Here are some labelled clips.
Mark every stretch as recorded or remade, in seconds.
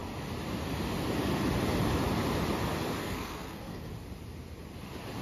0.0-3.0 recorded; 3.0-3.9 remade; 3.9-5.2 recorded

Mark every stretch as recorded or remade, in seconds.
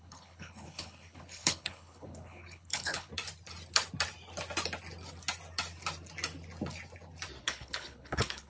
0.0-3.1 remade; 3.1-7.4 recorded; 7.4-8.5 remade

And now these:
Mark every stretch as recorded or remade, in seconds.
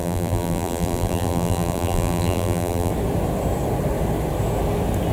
0.0-2.9 remade; 2.9-5.1 recorded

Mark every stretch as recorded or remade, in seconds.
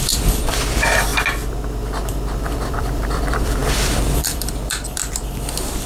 0.0-1.1 remade; 1.1-2.4 recorded; 2.4-5.9 remade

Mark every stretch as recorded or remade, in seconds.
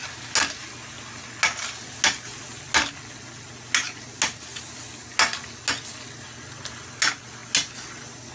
0.0-8.3 recorded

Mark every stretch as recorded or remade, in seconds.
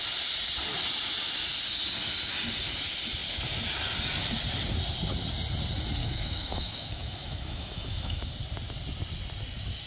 0.0-6.0 recorded; 6.0-8.2 remade; 8.2-9.9 recorded